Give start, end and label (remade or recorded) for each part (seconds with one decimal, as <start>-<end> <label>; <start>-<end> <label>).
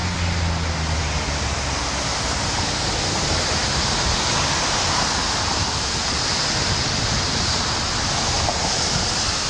0.0-9.5 recorded